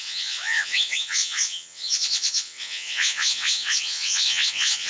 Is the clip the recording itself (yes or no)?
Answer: no